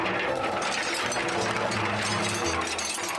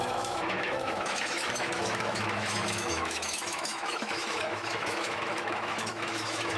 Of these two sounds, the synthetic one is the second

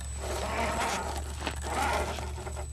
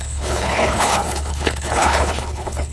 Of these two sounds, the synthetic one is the second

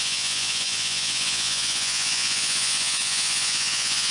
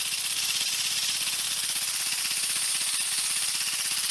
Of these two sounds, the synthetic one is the first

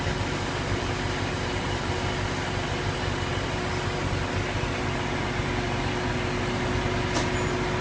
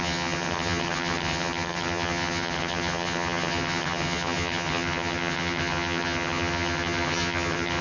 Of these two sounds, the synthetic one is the second